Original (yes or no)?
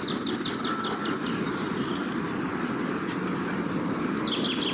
yes